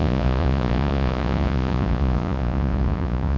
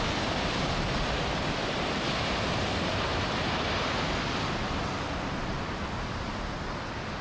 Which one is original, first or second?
second